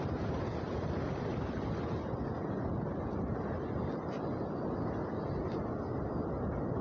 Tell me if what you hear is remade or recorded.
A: recorded